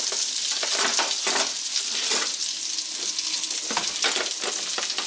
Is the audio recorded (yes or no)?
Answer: yes